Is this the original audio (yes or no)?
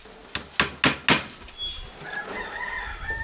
yes